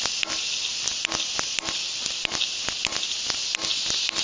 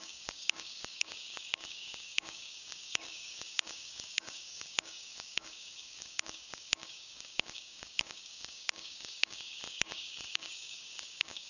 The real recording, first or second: first